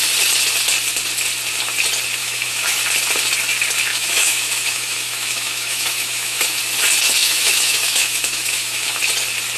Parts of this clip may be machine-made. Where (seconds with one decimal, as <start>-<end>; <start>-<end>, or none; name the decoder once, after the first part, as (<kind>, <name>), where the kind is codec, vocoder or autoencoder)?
2.2-2.8 (autoencoder, DAC-VAE); 3.9-6.6; 7.2-9.0